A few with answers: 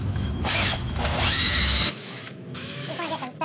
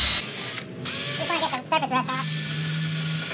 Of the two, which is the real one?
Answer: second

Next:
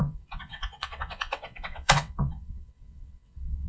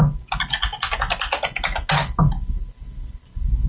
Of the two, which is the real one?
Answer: second